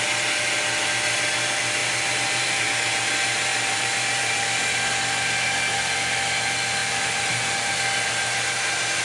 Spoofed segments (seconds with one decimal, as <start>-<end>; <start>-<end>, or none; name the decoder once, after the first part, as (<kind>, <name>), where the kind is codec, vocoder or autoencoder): 1.8-2.6 (vocoder, BigVGAN v2); 3.5-4.5; 6.8-7.7